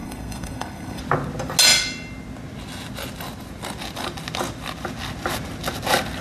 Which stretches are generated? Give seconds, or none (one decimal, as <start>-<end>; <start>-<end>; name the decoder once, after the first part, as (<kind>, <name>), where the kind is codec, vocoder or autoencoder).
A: 0.0-1.0 (codec, SNAC)

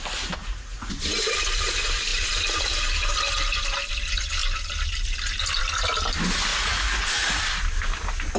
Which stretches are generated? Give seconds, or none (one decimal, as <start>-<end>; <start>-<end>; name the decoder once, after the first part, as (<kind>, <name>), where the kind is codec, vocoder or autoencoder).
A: 0.4-0.9 (vocoder, Vocos); 6.5-7.4